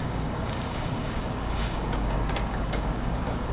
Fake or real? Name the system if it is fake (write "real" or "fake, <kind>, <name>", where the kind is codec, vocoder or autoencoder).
fake, codec, DAC